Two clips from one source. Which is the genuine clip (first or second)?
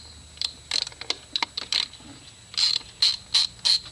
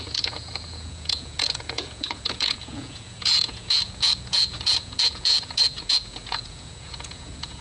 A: first